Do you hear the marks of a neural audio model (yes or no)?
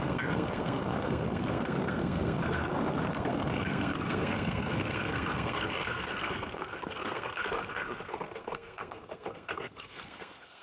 yes